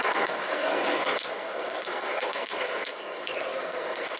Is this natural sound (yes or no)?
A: no